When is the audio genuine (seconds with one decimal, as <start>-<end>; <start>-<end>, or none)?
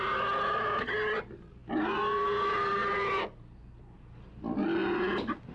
0.0-5.5